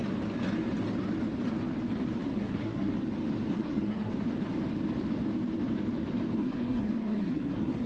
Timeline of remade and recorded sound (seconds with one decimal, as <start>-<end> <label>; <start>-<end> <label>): 0.0-2.2 recorded; 2.2-2.9 remade; 2.9-3.5 recorded; 3.5-4.1 remade; 4.1-6.4 recorded; 6.4-7.9 remade